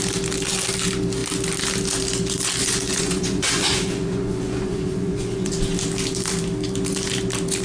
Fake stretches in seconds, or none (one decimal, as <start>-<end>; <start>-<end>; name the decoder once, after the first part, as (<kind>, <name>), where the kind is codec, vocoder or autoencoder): 2.6-5.5 (vocoder, Vocos)